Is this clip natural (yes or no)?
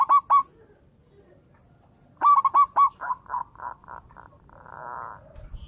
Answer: yes